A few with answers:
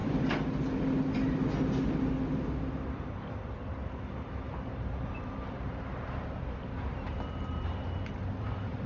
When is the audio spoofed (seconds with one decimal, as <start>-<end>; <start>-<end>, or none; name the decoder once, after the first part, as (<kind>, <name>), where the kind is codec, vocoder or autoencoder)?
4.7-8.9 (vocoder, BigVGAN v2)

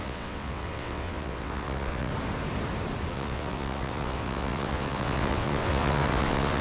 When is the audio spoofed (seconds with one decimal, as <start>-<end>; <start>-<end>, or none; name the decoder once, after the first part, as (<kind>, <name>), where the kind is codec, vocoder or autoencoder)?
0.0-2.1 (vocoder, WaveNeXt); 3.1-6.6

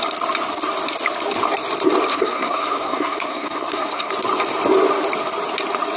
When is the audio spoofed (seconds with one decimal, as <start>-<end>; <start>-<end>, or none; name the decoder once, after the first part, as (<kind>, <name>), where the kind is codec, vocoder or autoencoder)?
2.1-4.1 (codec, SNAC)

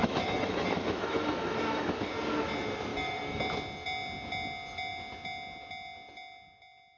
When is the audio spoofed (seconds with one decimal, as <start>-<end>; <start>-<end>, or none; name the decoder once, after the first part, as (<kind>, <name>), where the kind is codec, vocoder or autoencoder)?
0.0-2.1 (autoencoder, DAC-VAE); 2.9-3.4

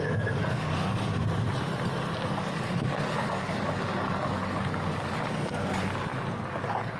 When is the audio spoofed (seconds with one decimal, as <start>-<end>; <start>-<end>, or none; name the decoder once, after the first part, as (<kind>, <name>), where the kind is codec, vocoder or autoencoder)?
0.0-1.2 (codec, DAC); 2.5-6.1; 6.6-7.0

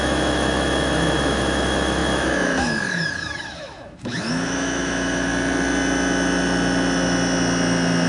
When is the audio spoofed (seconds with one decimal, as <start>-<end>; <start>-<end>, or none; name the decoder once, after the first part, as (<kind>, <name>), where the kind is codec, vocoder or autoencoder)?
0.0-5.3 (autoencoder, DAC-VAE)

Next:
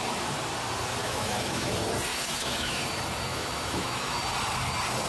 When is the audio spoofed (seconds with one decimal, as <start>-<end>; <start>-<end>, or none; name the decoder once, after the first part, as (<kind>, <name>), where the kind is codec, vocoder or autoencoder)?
1.0-1.7 (autoencoder, DAC-VAE); 2.1-2.8; 3.3-4.2